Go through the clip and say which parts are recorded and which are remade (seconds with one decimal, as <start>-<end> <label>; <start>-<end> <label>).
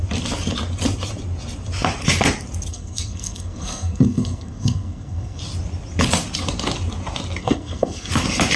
0.0-2.7 recorded; 2.7-5.4 remade; 5.4-7.4 recorded; 7.4-8.1 remade; 8.1-8.6 recorded